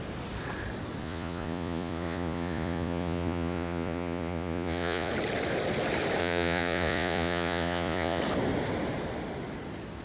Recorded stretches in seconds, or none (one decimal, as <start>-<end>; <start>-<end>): 0.0-1.0; 5.1-6.2; 8.2-10.0